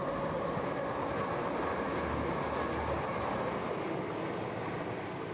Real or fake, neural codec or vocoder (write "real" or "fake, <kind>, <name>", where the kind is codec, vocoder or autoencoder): real